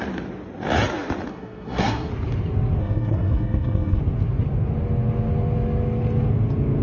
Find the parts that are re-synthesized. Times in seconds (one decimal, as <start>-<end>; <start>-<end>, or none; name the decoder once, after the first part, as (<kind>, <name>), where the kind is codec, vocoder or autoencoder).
1.3-2.1 (codec, SNAC); 2.8-4.0